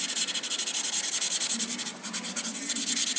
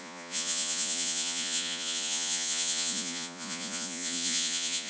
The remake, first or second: second